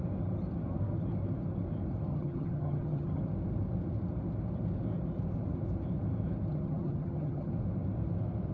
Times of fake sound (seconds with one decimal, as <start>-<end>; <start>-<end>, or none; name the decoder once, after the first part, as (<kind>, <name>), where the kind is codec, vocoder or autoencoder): 2.1-3.2 (vocoder, HiFi-GAN); 6.5-7.5